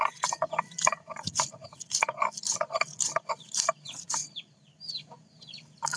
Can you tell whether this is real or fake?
real